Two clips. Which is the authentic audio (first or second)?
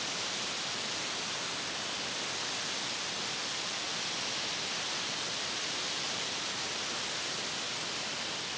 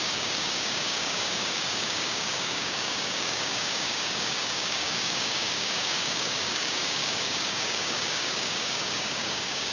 first